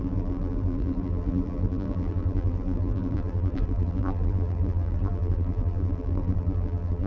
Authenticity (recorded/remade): remade